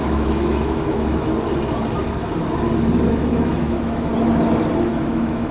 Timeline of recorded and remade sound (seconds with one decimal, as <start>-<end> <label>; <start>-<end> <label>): 0.0-1.3 remade; 1.3-3.1 recorded; 3.1-4.1 remade; 4.1-4.9 recorded; 4.9-5.5 remade